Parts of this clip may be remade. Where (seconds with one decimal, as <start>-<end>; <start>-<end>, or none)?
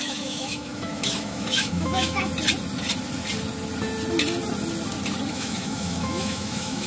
0.0-2.3; 5.3-6.9